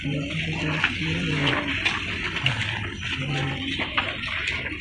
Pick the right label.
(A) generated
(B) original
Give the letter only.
B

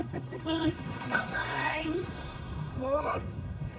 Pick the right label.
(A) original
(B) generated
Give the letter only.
B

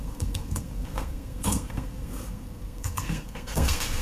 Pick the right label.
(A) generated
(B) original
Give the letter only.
A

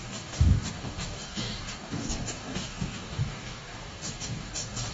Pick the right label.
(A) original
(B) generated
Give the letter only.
B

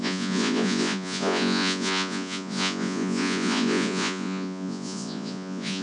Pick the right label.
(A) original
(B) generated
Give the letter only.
B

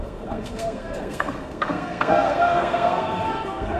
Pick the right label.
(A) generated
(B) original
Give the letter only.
A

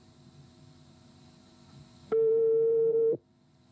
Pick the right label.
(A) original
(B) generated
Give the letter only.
B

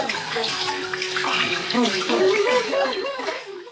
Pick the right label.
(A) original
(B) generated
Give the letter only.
B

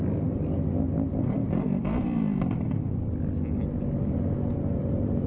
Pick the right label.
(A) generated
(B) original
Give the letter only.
B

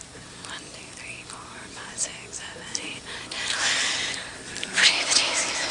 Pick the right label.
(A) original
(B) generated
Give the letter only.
B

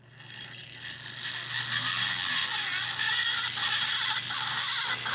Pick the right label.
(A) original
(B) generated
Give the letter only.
A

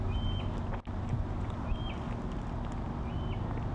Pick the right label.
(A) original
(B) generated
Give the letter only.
A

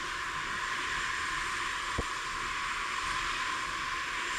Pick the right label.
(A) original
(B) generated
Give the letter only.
A